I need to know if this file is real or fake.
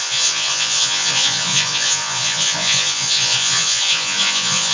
fake